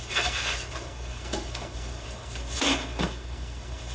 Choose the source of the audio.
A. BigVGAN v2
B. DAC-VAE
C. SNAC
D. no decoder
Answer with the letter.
C